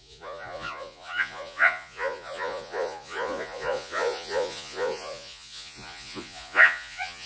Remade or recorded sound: remade